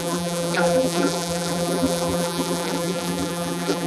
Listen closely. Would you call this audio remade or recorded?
remade